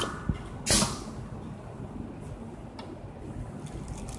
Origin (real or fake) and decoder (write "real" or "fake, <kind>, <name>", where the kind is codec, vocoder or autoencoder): real